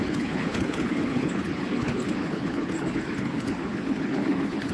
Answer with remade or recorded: remade